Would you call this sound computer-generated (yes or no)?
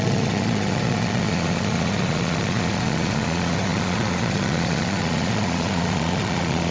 yes